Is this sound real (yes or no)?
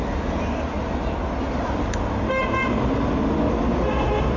yes